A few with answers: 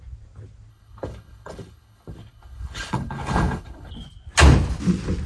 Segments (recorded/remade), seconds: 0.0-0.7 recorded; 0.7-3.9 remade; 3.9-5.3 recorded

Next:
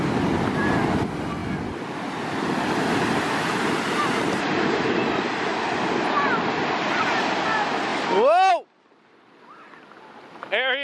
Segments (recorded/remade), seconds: 0.0-10.8 recorded

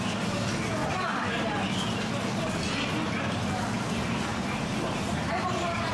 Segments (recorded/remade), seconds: 0.0-0.8 recorded; 0.8-1.6 remade; 1.6-4.3 recorded; 4.3-5.9 remade